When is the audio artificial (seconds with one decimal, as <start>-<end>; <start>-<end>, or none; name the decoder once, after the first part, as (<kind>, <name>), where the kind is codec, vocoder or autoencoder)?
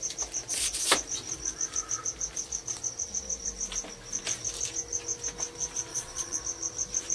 5.9-6.4 (vocoder, Vocos)